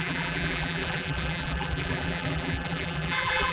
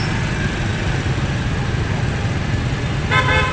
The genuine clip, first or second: second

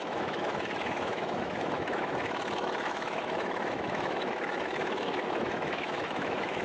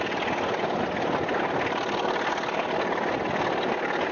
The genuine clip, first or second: second